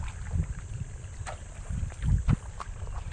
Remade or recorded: remade